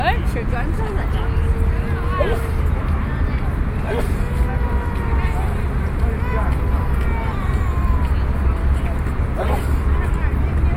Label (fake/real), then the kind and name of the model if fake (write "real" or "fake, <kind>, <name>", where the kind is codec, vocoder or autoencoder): real